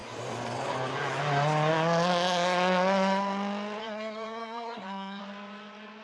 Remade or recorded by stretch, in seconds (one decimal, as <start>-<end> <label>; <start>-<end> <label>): 0.0-3.8 recorded; 3.8-5.2 remade; 5.2-6.0 recorded